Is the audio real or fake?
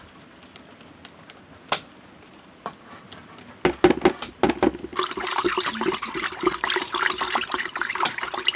real